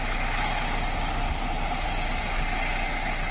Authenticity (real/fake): real